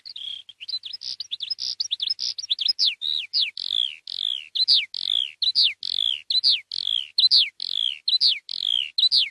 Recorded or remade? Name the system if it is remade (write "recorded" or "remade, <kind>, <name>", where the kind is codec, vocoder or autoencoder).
recorded